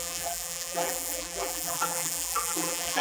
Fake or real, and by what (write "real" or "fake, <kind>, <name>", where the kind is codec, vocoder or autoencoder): fake, vocoder, BigVGAN v2